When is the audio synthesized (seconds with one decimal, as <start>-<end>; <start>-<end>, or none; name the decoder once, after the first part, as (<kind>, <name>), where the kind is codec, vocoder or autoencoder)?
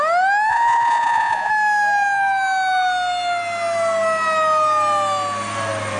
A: 0.5-1.5 (vocoder, Vocos)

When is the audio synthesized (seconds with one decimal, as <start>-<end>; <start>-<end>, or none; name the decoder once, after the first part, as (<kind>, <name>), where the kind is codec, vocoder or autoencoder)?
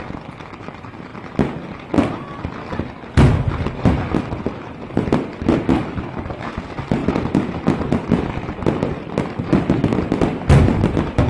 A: none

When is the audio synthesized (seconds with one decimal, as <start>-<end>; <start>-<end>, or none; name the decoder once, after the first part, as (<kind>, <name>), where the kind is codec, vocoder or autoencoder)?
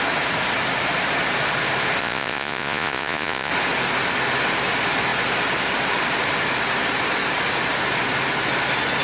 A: 2.0-3.5 (vocoder, Vocos)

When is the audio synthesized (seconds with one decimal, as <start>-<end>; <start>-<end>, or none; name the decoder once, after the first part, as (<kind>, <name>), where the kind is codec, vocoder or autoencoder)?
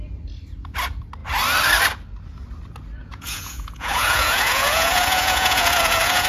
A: 3.0-6.3 (vocoder, Vocos)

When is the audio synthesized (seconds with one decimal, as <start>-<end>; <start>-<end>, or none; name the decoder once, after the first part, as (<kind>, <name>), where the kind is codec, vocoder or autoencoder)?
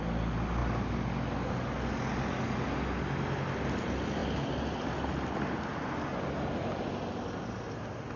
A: none